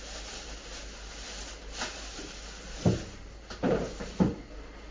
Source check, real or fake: real